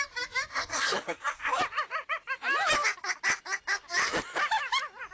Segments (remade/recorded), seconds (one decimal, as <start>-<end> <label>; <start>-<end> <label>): 0.0-0.5 recorded; 0.5-1.6 remade; 1.6-5.1 recorded